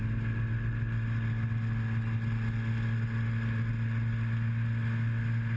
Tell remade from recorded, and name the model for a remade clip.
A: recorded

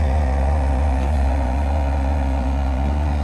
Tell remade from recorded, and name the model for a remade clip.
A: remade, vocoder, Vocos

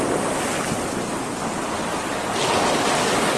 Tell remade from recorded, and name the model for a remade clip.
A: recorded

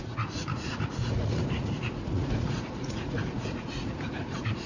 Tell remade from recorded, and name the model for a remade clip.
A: remade, vocoder, Vocos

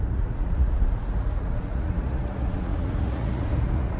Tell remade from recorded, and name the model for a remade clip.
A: remade, vocoder, Vocos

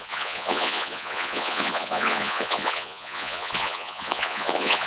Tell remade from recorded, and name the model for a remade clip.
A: remade, vocoder, Vocos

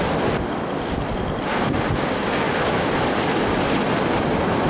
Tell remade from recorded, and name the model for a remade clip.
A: recorded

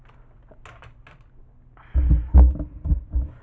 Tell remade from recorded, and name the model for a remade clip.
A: recorded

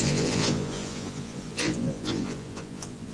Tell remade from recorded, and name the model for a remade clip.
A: remade, vocoder, Vocos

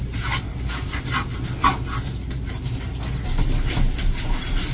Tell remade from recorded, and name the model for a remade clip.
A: recorded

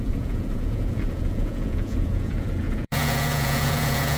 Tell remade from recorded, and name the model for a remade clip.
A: remade, vocoder, Vocos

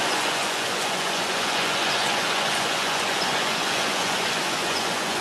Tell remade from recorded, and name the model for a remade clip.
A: remade, vocoder, Vocos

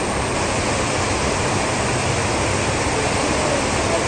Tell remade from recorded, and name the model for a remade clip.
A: recorded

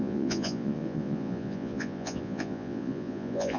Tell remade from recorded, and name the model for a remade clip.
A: remade, vocoder, Vocos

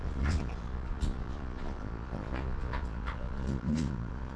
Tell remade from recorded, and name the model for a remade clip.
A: remade, vocoder, Vocos